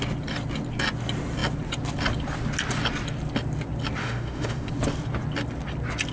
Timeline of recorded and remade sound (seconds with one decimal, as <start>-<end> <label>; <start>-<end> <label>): 0.0-4.0 recorded; 4.0-4.7 remade; 4.7-6.1 recorded